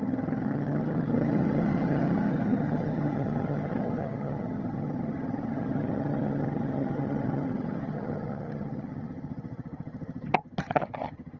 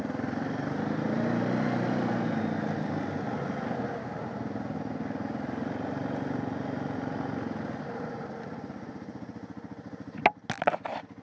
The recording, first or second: second